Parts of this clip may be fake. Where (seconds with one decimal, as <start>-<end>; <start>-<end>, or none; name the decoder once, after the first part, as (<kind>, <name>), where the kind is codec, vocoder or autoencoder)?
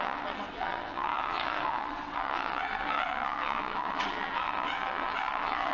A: 0.0-5.7 (vocoder, WaveNeXt)